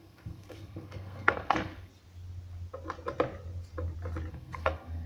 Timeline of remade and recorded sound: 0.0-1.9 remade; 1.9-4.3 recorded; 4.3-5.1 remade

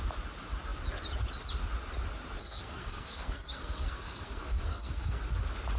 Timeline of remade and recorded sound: 0.0-2.4 recorded; 2.4-5.2 remade; 5.2-5.8 recorded

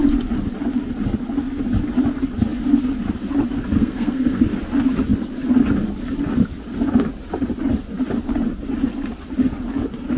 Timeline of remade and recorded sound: 0.0-3.8 recorded; 3.8-4.4 remade; 4.4-10.2 recorded

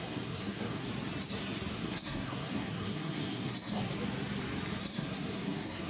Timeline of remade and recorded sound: 0.0-0.9 remade; 0.9-1.7 recorded; 1.7-3.9 remade; 3.9-4.8 recorded; 4.8-5.9 remade

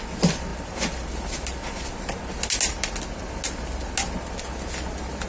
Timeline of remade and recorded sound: 0.0-5.3 recorded